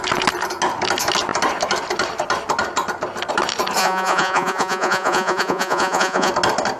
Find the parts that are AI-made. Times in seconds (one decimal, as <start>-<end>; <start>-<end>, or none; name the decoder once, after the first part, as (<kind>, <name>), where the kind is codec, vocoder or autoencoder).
3.8-6.3 (vocoder, Vocos)